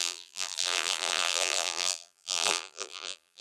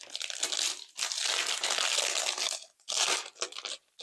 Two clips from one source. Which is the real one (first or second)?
second